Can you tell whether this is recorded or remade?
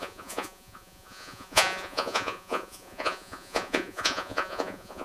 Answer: remade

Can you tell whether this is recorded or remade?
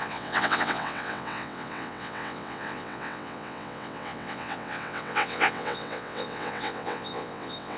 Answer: remade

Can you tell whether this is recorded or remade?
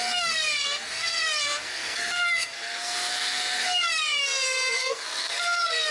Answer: remade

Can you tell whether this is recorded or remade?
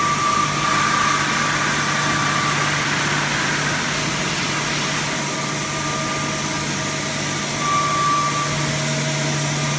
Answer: recorded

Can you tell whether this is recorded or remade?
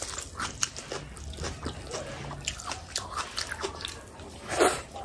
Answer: recorded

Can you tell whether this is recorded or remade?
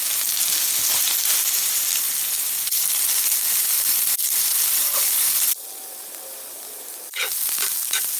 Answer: recorded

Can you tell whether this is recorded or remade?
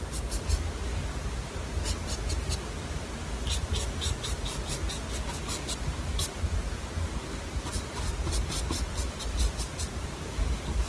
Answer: recorded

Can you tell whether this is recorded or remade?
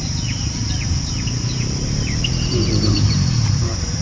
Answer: remade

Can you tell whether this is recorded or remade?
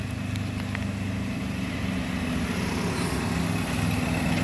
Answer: recorded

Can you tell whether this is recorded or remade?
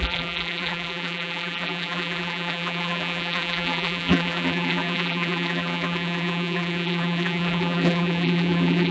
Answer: remade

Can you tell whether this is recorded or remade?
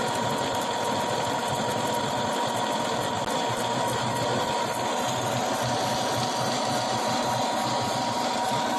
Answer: recorded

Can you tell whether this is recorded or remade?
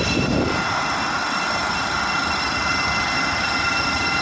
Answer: recorded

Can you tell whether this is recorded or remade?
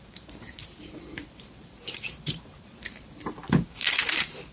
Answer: remade